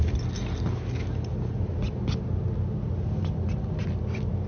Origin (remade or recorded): recorded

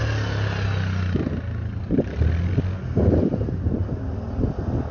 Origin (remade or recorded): recorded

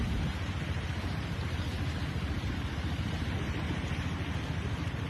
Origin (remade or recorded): remade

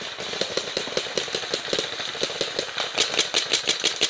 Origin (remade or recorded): recorded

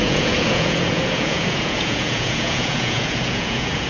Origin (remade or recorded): remade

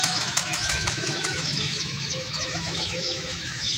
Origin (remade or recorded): remade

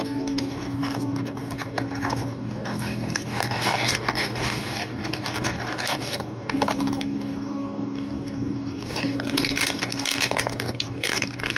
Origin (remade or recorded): remade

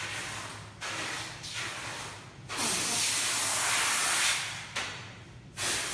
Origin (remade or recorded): recorded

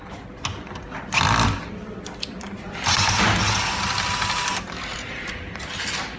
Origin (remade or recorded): recorded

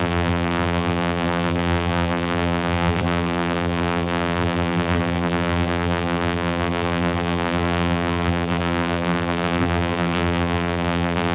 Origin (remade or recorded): remade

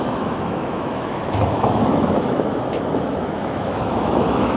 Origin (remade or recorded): remade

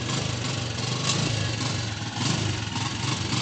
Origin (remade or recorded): recorded